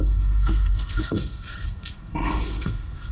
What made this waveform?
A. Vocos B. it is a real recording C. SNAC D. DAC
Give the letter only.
C